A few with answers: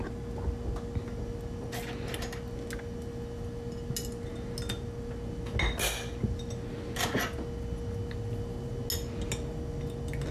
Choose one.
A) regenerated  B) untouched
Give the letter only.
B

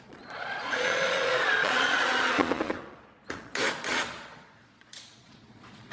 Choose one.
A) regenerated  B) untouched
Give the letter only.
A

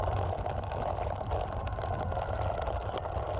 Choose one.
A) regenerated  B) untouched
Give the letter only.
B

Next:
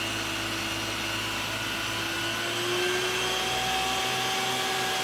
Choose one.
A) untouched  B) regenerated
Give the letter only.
A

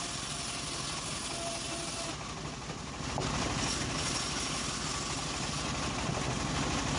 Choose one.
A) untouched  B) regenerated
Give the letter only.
A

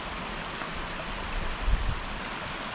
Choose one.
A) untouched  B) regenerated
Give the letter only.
A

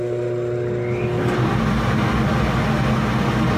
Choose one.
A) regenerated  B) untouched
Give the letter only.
B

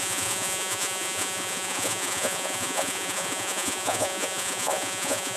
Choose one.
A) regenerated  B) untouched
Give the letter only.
A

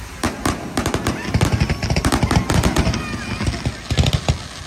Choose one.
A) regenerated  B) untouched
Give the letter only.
B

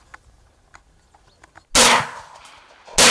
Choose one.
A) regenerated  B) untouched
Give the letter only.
B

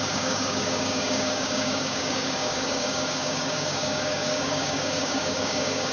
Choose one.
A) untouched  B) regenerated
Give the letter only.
B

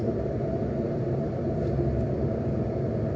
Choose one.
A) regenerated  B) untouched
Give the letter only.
B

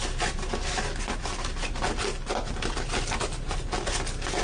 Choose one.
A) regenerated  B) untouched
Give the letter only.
B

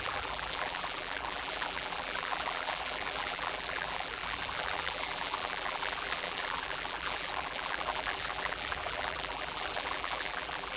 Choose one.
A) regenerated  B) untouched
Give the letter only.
A